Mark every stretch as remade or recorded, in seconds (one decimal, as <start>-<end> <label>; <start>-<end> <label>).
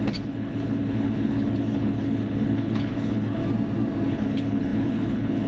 0.0-3.4 remade; 3.4-4.1 recorded; 4.1-5.5 remade